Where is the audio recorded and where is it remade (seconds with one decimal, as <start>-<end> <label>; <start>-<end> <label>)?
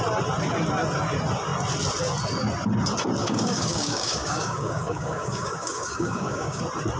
0.0-3.2 recorded; 3.2-6.6 remade; 6.6-7.0 recorded